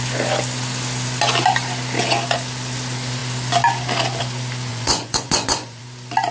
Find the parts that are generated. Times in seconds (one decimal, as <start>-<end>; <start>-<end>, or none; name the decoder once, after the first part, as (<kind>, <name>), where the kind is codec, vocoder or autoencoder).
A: 4.7-5.8 (vocoder, Vocos)